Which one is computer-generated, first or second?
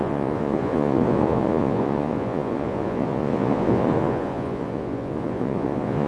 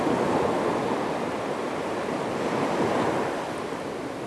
first